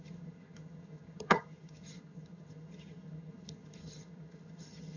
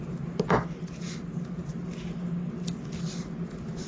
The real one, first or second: second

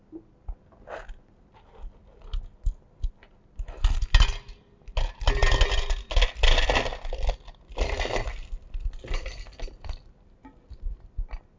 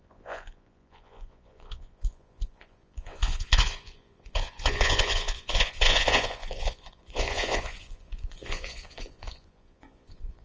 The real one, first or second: first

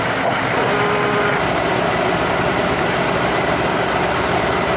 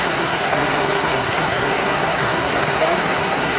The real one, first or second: first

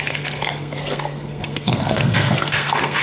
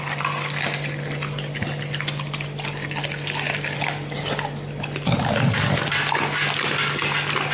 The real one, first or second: second